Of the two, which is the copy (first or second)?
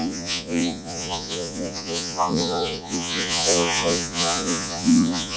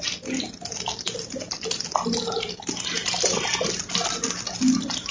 first